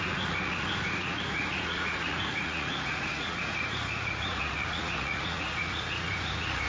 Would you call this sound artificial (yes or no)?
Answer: yes